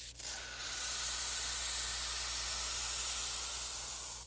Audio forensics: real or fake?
real